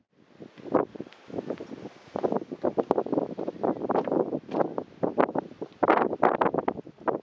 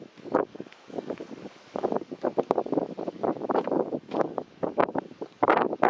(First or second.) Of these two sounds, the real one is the first